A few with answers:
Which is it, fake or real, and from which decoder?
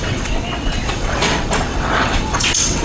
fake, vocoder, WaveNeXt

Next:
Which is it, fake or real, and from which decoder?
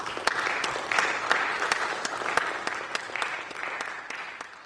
real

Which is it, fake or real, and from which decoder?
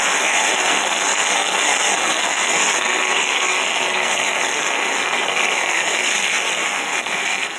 fake, codec, SNAC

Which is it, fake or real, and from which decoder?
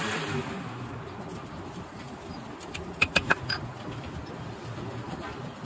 fake, vocoder, BigVGAN v2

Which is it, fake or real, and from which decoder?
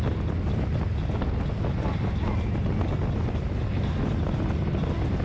real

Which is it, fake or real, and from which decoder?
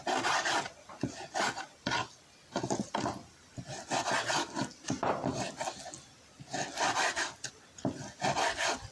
real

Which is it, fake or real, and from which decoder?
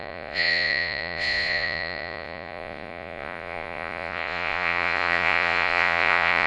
fake, vocoder, Vocos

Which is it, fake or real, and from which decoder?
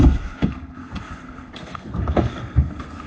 fake, codec, SNAC